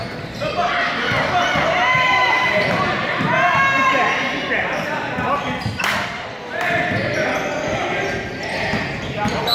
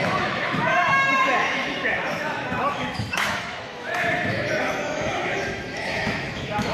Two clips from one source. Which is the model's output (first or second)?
second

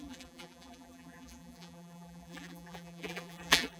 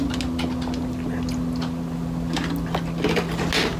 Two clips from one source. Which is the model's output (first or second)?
first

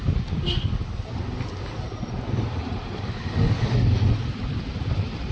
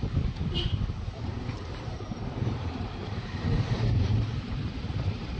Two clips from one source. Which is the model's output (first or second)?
second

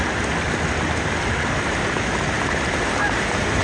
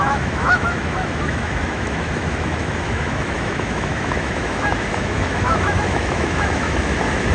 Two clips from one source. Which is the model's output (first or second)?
second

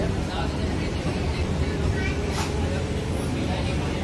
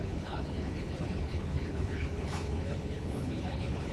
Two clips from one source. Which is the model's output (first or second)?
second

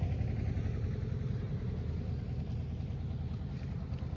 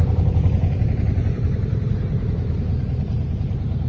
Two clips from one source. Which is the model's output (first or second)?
second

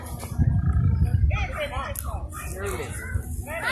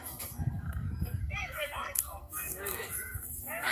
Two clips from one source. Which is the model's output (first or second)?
second